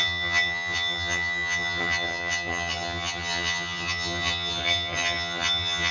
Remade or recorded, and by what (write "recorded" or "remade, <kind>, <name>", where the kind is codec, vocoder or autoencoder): remade, vocoder, HiFi-GAN